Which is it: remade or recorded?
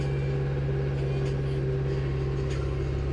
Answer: recorded